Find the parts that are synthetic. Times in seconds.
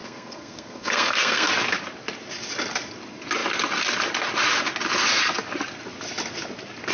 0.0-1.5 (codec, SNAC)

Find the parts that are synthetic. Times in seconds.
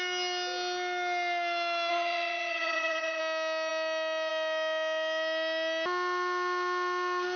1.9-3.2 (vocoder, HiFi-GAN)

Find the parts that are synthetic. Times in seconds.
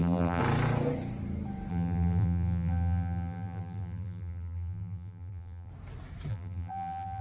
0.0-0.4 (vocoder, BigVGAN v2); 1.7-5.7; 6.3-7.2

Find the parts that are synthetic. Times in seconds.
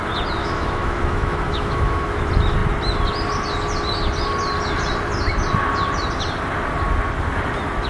0.4-2.2 (autoencoder, DAC-VAE)